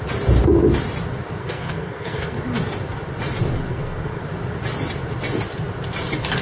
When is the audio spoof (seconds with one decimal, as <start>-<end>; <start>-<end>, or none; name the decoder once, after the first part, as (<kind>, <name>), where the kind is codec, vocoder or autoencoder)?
1.4-2.4 (codec, SNAC); 3.7-4.2